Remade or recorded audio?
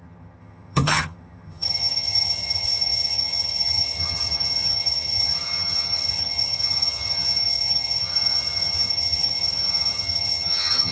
remade